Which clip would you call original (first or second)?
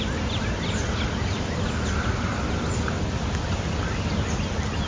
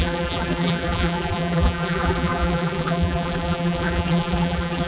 first